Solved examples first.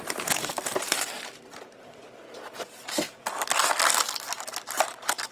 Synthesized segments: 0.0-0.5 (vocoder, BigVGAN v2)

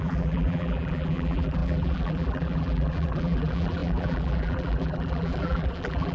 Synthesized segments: 0.0-6.1 (vocoder, BigVGAN v2)

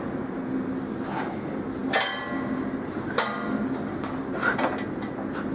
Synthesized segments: none

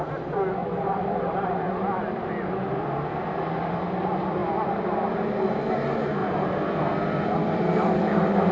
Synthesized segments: 0.6-2.5 (vocoder, BigVGAN v2); 4.4-5.2; 6.2-8.5

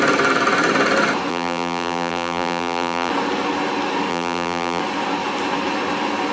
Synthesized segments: 1.3-3.1 (vocoder, BigVGAN v2); 4.1-4.8

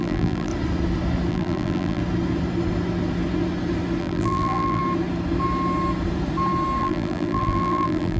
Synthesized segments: 0.0-0.5 (vocoder, BigVGAN v2); 1.3-2.0; 4.0-4.8; 6.8-8.2

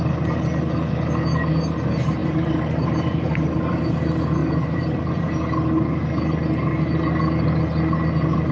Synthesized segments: 2.2-4.0 (vocoder, BigVGAN v2); 4.4-5.3

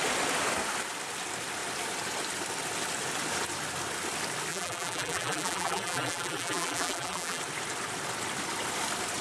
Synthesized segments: 4.5-7.4 (vocoder, BigVGAN v2)